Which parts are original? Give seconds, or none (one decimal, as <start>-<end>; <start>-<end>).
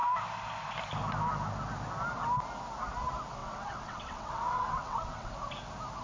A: 0.0-3.4; 5.3-6.0